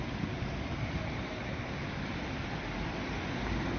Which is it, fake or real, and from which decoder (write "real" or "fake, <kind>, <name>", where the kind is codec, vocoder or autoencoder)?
real